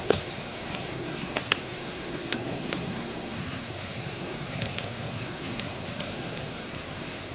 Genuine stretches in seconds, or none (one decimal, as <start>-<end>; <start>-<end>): none